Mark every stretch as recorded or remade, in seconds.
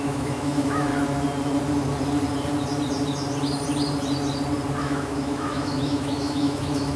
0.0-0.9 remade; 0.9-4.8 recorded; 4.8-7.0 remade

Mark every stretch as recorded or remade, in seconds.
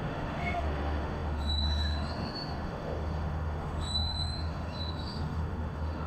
0.0-6.1 remade